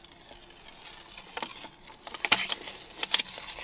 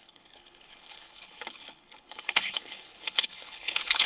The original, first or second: first